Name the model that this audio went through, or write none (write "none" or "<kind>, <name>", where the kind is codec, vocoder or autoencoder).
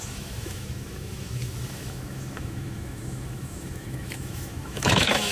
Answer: autoencoder, DAC-VAE